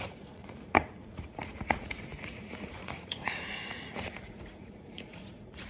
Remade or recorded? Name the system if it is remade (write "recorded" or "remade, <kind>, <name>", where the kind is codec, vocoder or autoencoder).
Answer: remade, vocoder, Vocos